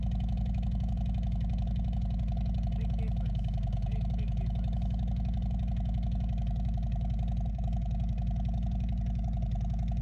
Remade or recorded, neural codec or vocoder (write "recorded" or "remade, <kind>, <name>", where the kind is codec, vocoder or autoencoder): remade, autoencoder, DAC-VAE